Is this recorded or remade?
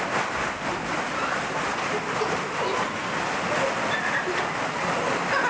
recorded